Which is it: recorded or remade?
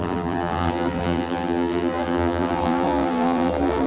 remade